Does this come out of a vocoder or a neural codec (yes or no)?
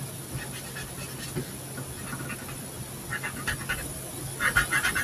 no